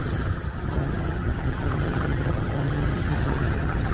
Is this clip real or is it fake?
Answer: fake